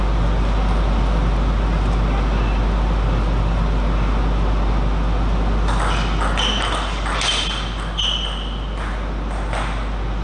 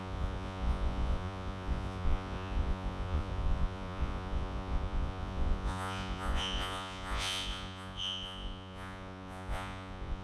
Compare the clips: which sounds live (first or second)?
first